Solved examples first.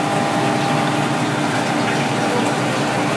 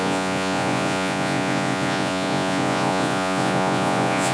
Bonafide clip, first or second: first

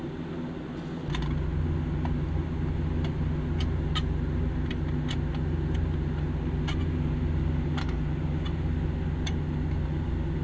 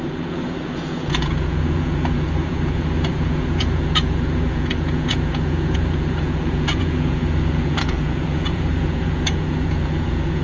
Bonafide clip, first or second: first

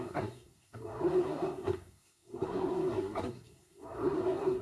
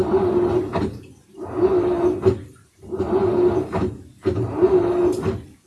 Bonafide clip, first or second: second